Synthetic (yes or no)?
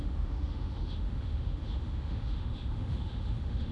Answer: yes